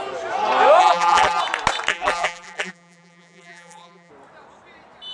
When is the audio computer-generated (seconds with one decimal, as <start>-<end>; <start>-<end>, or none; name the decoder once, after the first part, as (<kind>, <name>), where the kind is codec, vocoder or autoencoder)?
0.8-1.4 (vocoder, BigVGAN v2); 1.9-4.1